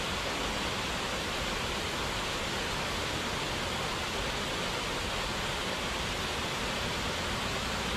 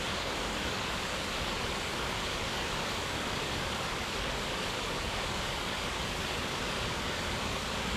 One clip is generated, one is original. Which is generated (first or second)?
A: second